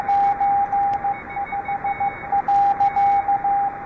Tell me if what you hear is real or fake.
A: real